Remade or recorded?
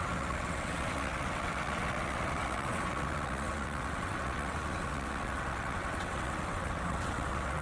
remade